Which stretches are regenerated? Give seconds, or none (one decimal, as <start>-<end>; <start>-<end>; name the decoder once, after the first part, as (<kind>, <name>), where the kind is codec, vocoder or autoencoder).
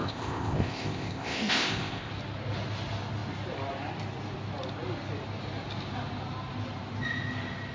0.0-2.1 (codec, ZipCodec)